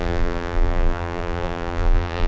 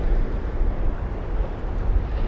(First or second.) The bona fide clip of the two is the second